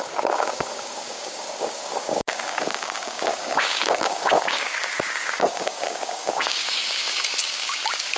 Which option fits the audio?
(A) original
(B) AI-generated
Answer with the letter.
B